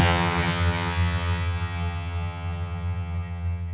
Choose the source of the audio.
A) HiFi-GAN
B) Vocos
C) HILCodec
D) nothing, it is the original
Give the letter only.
A